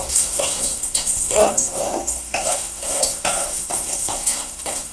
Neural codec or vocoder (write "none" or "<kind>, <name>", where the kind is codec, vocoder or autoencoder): codec, SNAC